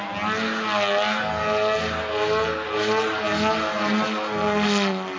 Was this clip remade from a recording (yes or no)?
no